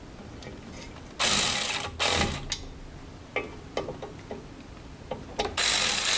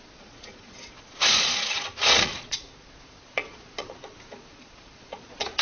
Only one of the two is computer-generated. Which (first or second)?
second